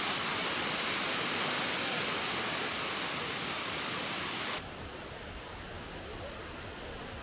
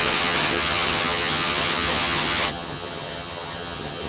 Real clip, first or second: first